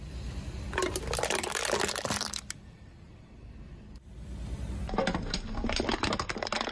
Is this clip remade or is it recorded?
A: recorded